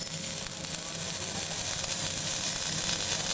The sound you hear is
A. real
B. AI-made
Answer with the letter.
A